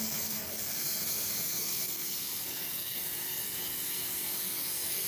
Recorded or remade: remade